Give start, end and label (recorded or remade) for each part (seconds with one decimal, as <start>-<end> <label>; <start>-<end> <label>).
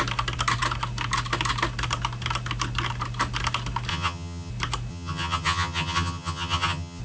0.0-3.9 recorded; 3.9-4.5 remade; 4.5-4.9 recorded; 4.9-7.0 remade